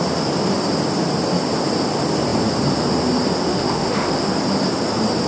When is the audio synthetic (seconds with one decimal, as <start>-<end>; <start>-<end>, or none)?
3.5-4.3